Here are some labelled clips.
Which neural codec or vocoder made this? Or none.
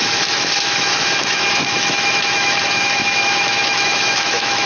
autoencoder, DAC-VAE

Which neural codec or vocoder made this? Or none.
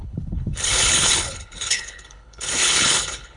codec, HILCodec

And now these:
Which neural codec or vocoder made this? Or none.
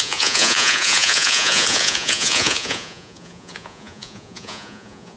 vocoder, Vocos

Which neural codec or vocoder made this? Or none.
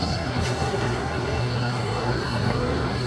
codec, SNAC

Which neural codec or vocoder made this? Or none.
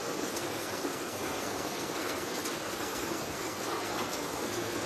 codec, SNAC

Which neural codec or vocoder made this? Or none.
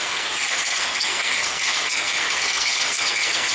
codec, SNAC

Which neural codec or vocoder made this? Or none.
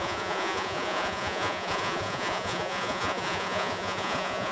vocoder, Vocos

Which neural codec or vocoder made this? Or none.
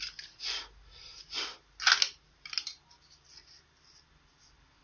none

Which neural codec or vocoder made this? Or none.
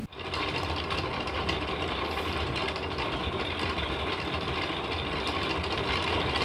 none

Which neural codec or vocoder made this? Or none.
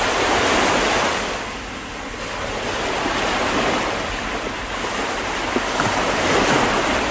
none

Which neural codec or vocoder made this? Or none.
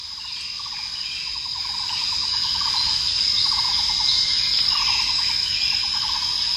none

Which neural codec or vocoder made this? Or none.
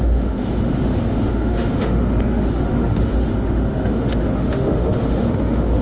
autoencoder, DAC-VAE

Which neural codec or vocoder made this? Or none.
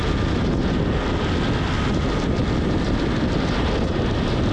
none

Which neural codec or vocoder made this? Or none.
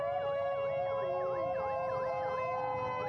none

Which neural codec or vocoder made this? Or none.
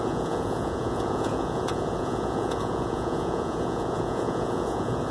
vocoder, Vocos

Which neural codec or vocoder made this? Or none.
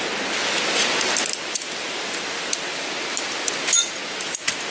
none